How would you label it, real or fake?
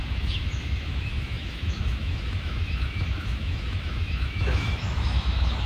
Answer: fake